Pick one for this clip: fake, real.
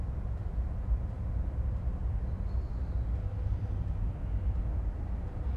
real